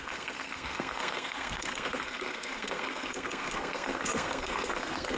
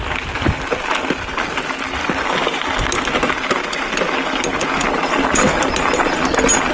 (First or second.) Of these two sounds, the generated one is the first